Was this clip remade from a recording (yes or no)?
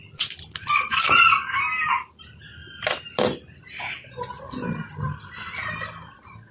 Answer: yes